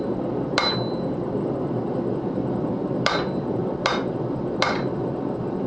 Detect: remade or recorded remade